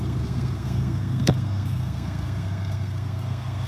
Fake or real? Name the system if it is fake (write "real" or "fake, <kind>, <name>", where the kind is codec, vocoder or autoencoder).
fake, codec, SNAC